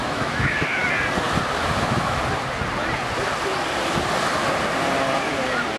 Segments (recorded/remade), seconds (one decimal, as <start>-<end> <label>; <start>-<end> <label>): 0.0-0.8 remade; 0.8-1.8 recorded; 1.8-2.2 remade; 2.2-5.8 recorded